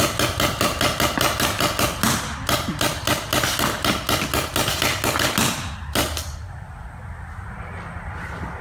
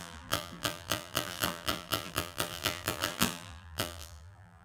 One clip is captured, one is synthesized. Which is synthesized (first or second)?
second